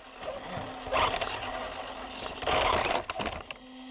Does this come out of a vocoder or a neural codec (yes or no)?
no